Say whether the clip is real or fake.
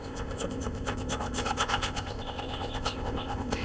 fake